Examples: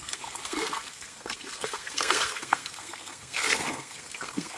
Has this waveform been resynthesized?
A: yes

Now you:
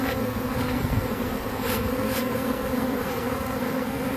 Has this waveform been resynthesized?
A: yes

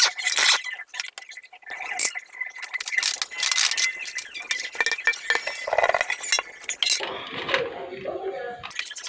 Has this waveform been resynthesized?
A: no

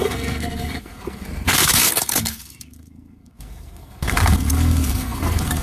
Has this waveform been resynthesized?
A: yes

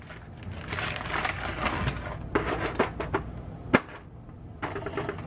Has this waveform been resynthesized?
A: no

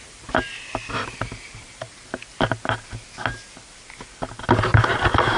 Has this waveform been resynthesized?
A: no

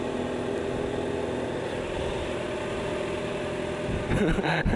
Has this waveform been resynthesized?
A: no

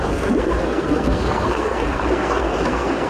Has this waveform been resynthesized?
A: yes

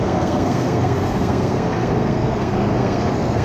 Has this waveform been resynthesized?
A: yes